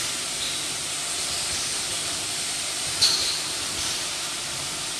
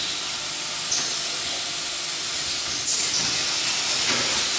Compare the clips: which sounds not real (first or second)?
first